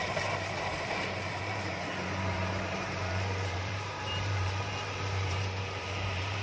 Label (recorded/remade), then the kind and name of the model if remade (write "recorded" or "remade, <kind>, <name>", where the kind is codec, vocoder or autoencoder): remade, vocoder, BigVGAN v2